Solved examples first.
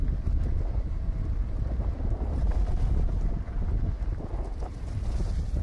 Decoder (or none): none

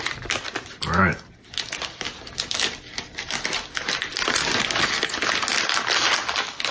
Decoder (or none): none